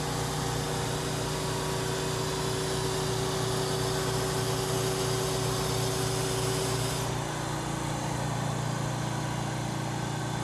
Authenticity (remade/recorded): recorded